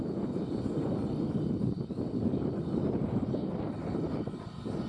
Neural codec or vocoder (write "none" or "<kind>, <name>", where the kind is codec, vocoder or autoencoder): none